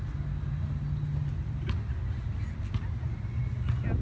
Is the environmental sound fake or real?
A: real